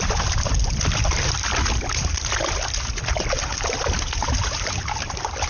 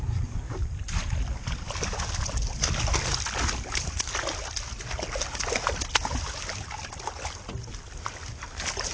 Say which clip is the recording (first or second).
second